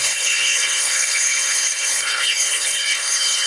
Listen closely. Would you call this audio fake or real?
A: fake